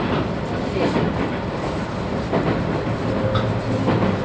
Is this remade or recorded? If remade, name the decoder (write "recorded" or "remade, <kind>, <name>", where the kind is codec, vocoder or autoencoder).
recorded